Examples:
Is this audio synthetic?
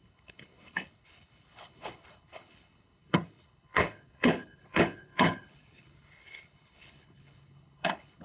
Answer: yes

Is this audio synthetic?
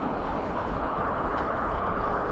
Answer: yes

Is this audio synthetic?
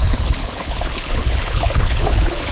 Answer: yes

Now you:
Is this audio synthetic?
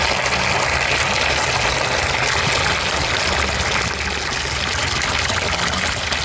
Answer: no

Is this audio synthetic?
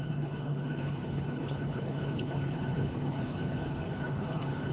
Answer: yes